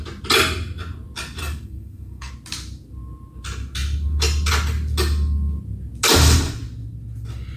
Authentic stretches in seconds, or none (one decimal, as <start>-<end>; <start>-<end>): 0.0-1.4; 2.3-7.6